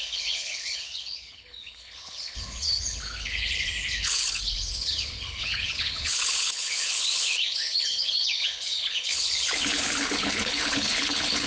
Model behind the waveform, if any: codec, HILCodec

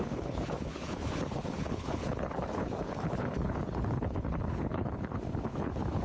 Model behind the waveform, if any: codec, HILCodec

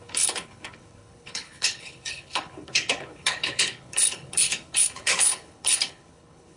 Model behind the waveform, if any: codec, HILCodec